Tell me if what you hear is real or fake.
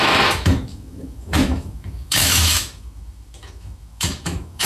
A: fake